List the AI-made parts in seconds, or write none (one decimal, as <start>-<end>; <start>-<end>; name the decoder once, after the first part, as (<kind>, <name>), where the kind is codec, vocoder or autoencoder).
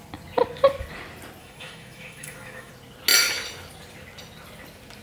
1.4-2.7 (autoencoder, DAC-VAE)